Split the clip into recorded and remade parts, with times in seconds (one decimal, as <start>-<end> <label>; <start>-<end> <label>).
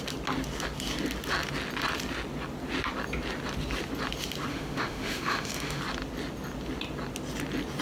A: 0.0-4.5 recorded; 4.5-5.8 remade; 5.8-7.8 recorded